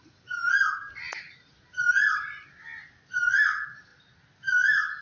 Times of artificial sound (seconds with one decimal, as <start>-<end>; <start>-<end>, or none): none

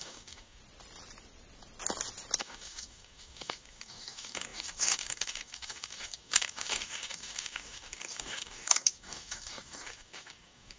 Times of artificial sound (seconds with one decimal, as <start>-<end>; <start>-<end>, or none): 0.0-0.6; 2.4-10.8

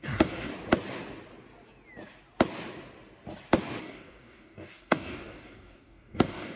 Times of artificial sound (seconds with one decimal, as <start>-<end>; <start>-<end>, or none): 0.0-0.5; 3.8-6.6

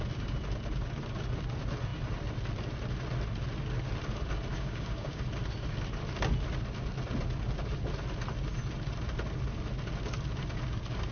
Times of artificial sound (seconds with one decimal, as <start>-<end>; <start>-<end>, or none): 4.5-5.2

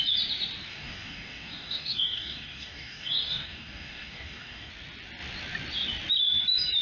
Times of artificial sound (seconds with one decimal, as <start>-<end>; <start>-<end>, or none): 0.7-4.7

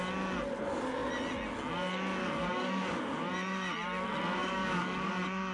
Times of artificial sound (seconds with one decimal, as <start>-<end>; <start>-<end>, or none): 2.2-3.3; 4.4-5.1

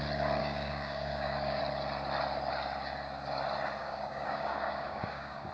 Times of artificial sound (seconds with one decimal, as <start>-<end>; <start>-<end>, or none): 0.4-1.6; 3.8-5.5

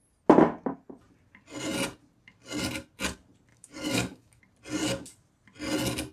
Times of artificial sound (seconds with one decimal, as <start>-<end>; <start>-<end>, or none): 3.5-4.4